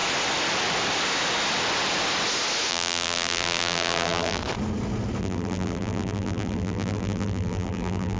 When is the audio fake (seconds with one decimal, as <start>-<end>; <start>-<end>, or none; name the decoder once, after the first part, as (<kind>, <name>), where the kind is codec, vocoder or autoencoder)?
2.7-4.4 (vocoder, BigVGAN v2); 5.2-8.2